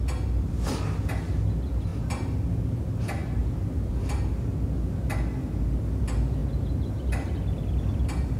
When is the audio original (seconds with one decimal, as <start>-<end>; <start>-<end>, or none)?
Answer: 0.0-8.4